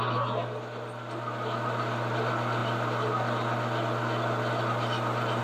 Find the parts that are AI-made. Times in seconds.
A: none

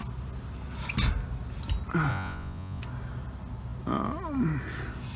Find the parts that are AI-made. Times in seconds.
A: 2.1-2.8 (vocoder, Vocos)